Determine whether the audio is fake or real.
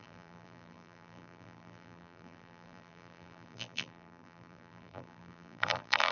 fake